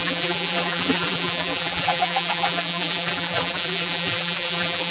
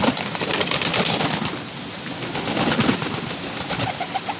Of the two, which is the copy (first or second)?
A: first